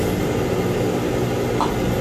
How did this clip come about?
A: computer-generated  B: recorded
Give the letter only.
B